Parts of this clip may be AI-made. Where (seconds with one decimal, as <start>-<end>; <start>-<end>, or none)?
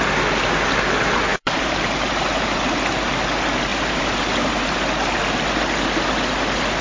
1.3-2.4; 3.7-4.8